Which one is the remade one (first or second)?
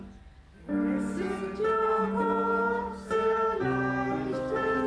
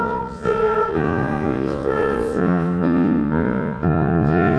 second